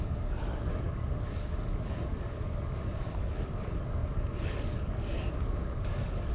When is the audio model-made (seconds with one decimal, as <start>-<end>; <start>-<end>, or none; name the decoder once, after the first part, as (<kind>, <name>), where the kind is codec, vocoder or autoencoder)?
0.0-6.3 (codec, DAC)